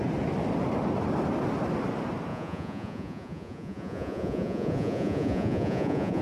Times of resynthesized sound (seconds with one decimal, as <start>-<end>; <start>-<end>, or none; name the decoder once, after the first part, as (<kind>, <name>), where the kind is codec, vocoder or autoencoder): 2.3-6.2 (vocoder, Vocos)